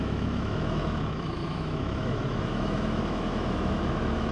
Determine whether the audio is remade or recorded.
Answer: remade